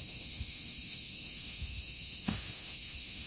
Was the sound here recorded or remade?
remade